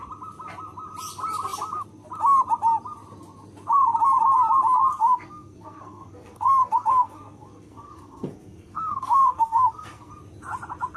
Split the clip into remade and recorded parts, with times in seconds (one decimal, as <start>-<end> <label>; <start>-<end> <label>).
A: 0.0-4.9 recorded; 4.9-10.1 remade; 10.1-11.0 recorded